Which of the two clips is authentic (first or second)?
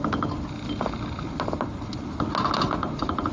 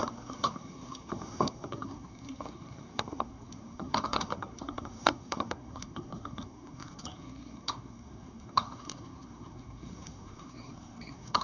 first